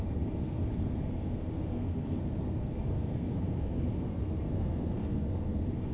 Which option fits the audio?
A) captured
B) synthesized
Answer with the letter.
B